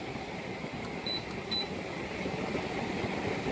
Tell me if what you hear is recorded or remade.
recorded